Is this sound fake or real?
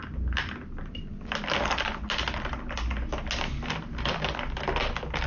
real